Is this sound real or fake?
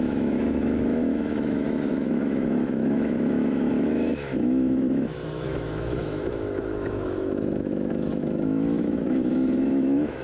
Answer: fake